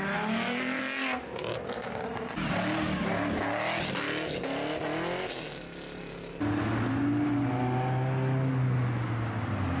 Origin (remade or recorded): recorded